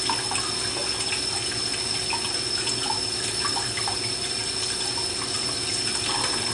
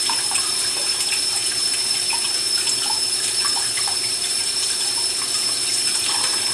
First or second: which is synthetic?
second